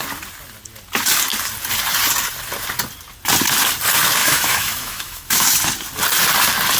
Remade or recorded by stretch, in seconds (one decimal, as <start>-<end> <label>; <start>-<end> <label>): 0.0-4.2 recorded; 4.2-5.6 remade; 5.6-6.8 recorded